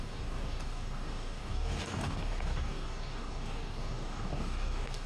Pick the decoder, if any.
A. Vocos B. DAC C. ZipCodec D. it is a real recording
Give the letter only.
B